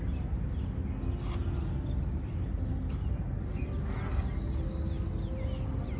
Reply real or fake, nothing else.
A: real